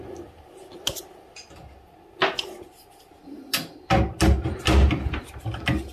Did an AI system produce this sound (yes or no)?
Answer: no